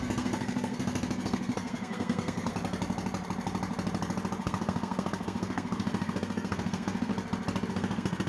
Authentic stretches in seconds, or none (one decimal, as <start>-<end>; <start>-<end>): 2.5-4.4; 7.1-7.7